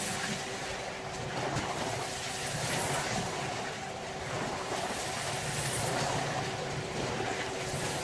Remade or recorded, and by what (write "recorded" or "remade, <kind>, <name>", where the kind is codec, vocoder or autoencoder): recorded